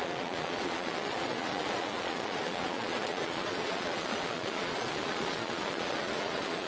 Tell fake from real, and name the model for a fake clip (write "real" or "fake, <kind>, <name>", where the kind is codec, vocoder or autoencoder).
fake, vocoder, Vocos